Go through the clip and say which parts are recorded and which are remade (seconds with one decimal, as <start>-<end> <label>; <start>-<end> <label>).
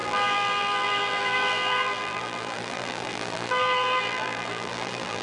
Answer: 0.0-5.2 remade